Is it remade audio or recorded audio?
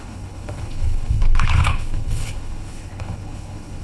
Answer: remade